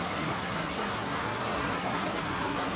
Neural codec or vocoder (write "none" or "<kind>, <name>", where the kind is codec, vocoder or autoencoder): codec, SNAC